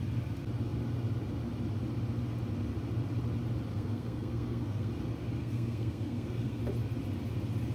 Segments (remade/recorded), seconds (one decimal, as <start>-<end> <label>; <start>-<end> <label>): 0.0-3.7 recorded; 3.7-4.9 remade; 4.9-5.4 recorded; 5.4-6.6 remade; 6.6-7.7 recorded

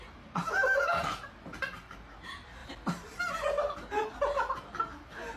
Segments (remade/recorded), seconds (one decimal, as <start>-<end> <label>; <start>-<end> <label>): 0.0-2.6 recorded; 2.6-3.6 remade; 3.6-5.4 recorded

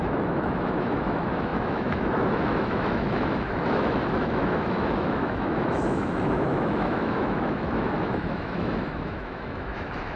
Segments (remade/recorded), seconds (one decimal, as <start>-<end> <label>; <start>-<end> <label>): 0.0-10.2 remade